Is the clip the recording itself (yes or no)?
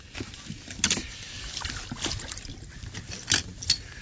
yes